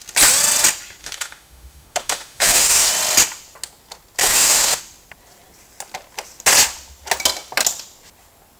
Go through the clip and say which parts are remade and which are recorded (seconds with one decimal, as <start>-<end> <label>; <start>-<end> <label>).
0.0-1.0 recorded; 1.0-2.9 remade; 2.9-4.2 recorded; 4.2-4.8 remade; 4.8-8.6 recorded